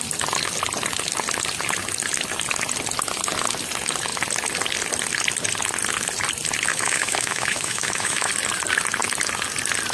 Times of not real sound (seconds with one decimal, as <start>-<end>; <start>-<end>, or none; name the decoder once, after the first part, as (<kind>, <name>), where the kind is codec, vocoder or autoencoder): 6.7-8.3 (autoencoder, DAC-VAE)